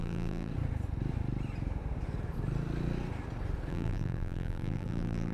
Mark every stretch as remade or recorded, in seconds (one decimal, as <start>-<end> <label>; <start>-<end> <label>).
0.0-0.5 remade; 0.5-3.7 recorded; 3.7-5.3 remade